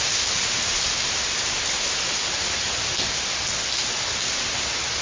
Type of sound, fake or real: real